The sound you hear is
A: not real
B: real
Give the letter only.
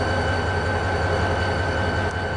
B